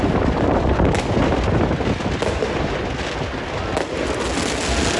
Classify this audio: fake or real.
real